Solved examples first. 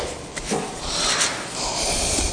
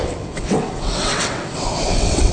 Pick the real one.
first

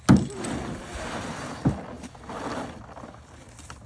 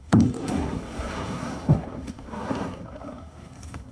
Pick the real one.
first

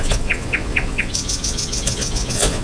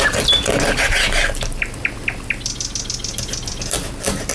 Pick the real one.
second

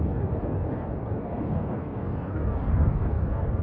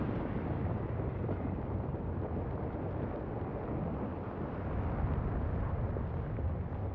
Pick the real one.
second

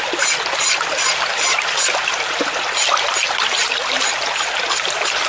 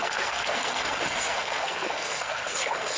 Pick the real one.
first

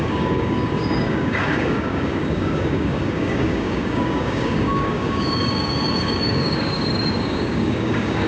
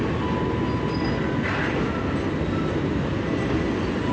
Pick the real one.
second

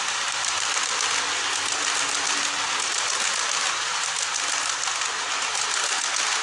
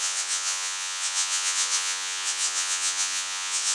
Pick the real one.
first